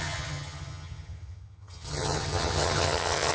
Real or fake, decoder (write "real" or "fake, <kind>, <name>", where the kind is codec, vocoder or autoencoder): fake, vocoder, HiFi-GAN